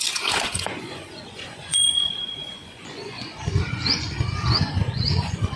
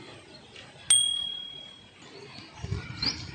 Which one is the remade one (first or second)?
first